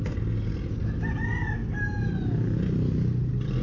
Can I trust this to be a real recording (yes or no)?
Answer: yes